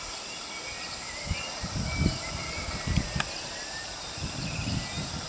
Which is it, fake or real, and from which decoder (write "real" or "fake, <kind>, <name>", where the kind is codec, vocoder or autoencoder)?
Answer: real